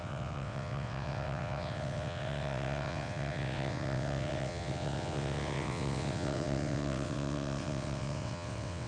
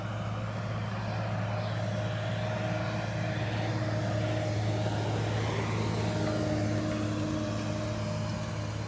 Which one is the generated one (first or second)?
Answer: first